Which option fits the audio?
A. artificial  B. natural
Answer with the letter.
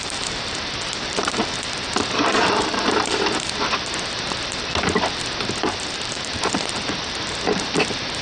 A